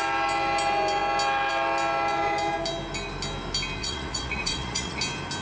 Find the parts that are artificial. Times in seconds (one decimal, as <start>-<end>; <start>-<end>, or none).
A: 3.8-5.0